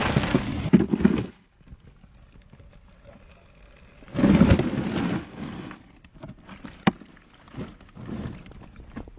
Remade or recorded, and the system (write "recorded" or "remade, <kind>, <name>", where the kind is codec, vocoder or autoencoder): recorded